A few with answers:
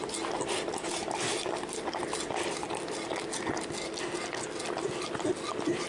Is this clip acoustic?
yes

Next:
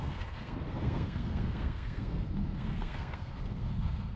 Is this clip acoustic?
no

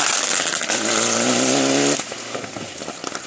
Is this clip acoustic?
yes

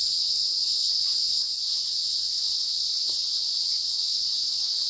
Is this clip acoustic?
no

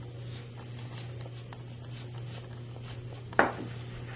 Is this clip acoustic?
yes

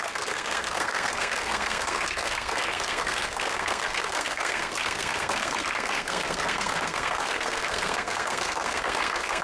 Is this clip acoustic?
no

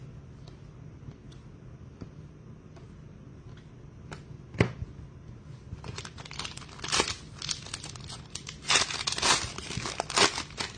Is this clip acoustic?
yes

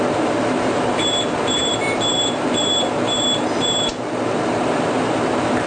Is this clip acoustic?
no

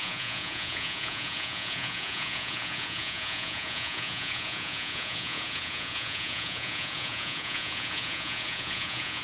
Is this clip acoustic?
no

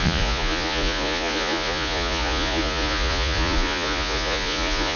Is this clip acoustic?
no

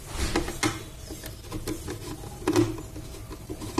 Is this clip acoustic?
yes